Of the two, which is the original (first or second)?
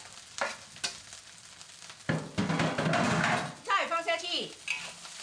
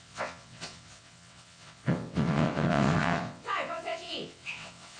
first